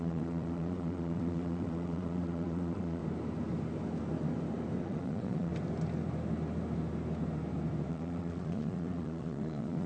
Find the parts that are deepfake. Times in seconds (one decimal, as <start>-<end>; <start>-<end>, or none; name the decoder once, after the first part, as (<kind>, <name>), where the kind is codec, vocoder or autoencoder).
0.0-3.0 (vocoder, Vocos); 4.8-5.5; 7.9-9.9